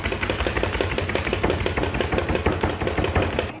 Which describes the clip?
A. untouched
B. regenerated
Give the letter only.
A